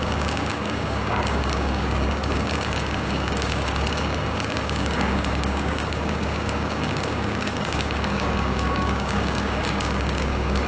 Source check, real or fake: fake